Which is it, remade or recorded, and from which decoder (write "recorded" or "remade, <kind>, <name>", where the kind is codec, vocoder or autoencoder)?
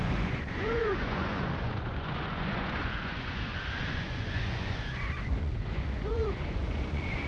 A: remade, vocoder, Vocos